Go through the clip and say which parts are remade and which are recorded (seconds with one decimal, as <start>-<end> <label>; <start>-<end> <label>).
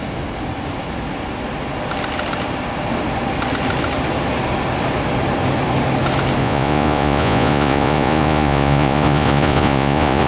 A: 0.0-6.4 recorded; 6.4-10.3 remade